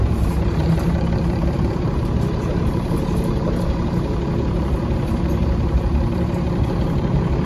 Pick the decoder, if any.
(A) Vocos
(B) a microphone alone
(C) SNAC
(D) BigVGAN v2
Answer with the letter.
D